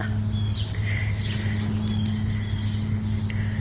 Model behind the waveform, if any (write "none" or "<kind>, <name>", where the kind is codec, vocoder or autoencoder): none